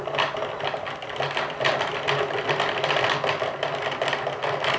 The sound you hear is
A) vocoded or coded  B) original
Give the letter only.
B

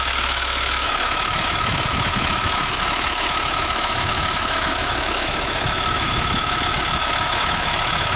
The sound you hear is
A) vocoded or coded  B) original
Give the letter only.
A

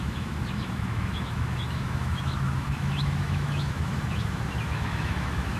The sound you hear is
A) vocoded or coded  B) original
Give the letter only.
A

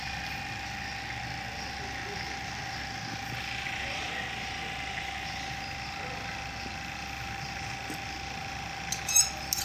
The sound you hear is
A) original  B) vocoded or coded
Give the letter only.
A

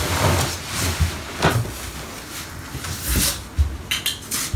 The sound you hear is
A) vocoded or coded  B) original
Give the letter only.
B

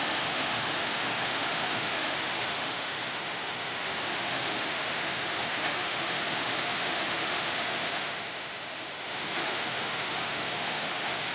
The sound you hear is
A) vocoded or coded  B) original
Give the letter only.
A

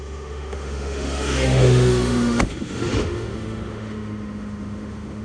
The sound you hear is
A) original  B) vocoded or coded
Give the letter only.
B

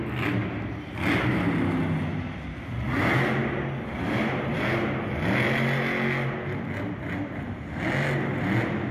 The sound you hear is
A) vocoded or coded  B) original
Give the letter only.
B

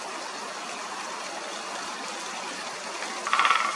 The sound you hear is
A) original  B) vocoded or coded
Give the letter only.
A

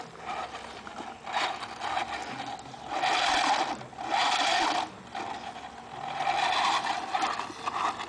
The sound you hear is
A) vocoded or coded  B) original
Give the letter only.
B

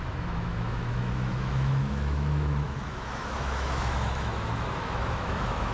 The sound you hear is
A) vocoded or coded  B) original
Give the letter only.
A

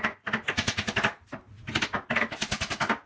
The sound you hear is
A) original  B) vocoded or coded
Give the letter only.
A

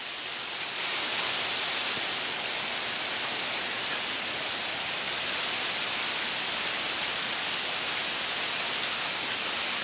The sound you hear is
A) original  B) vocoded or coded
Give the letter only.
A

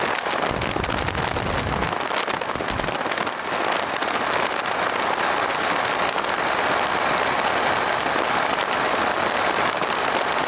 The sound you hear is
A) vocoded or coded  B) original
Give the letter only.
B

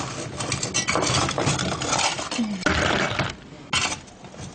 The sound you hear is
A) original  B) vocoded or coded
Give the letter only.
A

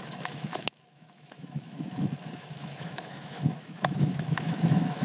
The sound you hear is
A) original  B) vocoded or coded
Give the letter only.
B